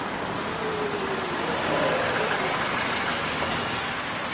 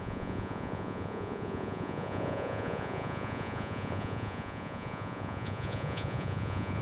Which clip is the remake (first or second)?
second